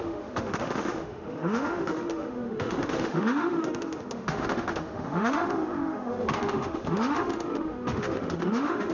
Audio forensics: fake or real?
fake